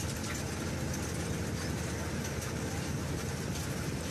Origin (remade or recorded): recorded